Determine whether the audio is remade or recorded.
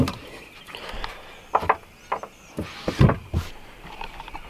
recorded